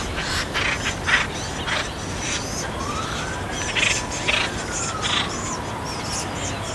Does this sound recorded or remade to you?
recorded